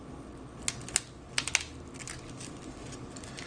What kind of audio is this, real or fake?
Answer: real